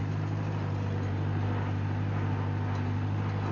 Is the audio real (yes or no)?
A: yes